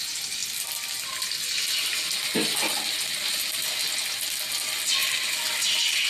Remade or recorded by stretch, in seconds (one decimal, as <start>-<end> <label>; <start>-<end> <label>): 0.0-5.0 recorded; 5.0-6.1 remade